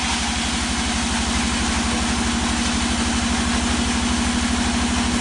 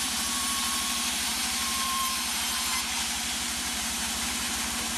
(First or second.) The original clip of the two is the first